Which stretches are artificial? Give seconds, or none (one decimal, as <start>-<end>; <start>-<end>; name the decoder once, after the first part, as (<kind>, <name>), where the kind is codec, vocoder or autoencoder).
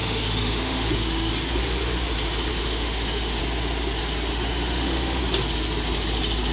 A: 0.0-1.3 (autoencoder, DAC-VAE); 2.5-3.4; 4.3-5.2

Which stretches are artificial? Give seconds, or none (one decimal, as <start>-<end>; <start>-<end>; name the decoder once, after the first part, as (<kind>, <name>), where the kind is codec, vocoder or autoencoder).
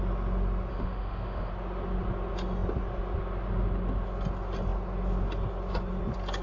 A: 0.7-1.5 (autoencoder, DAC-VAE)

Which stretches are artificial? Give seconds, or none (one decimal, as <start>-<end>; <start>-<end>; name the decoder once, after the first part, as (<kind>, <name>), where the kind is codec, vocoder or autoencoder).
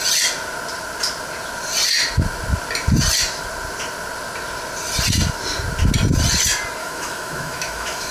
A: 6.8-8.1 (autoencoder, DAC-VAE)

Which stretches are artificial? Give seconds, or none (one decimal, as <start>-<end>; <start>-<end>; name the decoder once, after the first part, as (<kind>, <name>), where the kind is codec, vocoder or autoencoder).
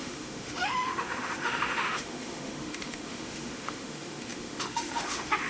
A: 0.0-5.5 (autoencoder, DAC-VAE)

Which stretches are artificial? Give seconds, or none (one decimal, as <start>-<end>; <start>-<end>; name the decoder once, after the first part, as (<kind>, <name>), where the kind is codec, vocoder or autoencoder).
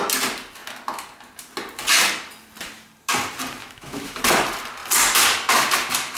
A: 3.6-4.2 (autoencoder, DAC-VAE)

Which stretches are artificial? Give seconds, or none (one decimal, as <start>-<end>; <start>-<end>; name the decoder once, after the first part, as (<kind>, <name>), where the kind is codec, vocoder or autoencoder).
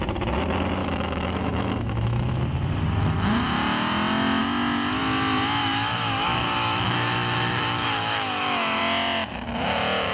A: 0.8-2.4 (autoencoder, DAC-VAE); 5.6-8.8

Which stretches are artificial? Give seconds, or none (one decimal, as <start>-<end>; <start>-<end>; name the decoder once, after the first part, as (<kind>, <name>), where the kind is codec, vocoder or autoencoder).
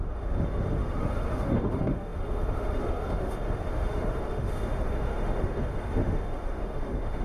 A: 0.0-7.2 (autoencoder, DAC-VAE)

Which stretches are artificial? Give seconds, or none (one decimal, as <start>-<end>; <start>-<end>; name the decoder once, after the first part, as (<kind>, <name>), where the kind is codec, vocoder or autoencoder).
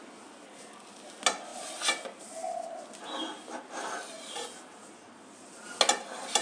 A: none